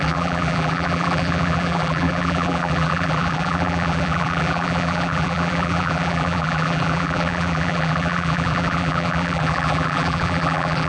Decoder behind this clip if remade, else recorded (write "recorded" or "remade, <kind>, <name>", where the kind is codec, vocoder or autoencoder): remade, vocoder, BigVGAN v2